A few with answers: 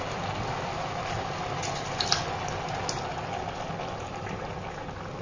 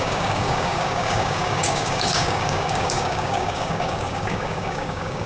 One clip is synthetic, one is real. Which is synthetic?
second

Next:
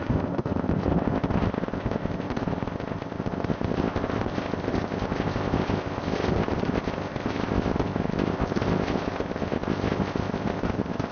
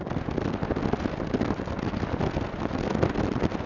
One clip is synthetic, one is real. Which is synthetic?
first